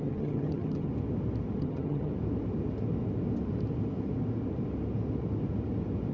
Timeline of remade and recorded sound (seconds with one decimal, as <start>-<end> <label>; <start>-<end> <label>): 0.0-0.9 remade; 0.9-1.6 recorded; 1.6-2.1 remade; 2.1-6.1 recorded